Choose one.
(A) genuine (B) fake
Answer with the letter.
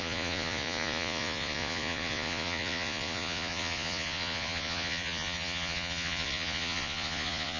B